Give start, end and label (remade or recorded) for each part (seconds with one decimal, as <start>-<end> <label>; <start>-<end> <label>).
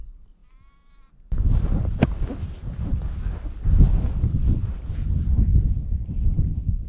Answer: 0.0-0.4 recorded; 0.4-4.5 remade; 4.5-5.5 recorded; 5.5-6.5 remade; 6.5-6.9 recorded